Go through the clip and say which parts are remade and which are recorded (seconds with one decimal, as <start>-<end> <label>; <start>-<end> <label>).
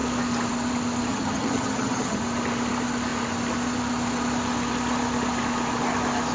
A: 0.0-1.1 recorded; 1.1-2.2 remade; 2.2-6.3 recorded